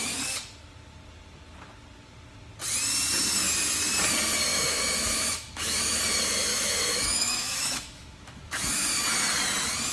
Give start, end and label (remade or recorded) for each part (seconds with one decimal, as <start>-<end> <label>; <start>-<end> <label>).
0.0-4.5 recorded; 4.5-6.0 remade; 6.0-6.5 recorded; 6.5-9.0 remade; 9.0-9.9 recorded